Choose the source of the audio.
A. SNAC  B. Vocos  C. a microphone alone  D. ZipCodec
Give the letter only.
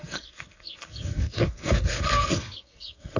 A